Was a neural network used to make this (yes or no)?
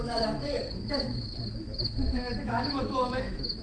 yes